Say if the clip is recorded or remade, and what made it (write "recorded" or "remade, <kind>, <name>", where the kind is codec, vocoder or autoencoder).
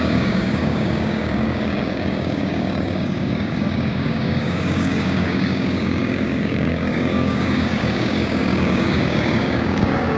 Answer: remade, codec, DAC